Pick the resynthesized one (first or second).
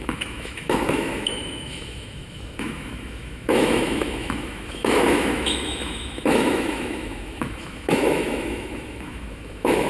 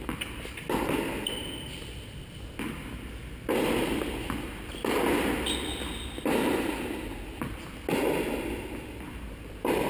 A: first